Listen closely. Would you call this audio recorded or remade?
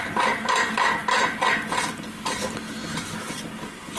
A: recorded